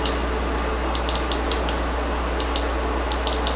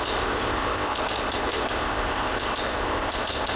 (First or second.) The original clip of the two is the first